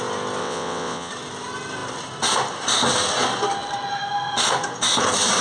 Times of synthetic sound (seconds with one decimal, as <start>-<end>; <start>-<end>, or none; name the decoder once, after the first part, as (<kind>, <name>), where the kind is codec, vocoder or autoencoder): 0.4-1.1 (vocoder, WaveNeXt)